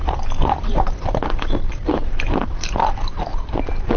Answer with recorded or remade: recorded